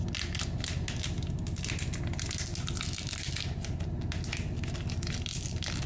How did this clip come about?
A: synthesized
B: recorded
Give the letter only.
B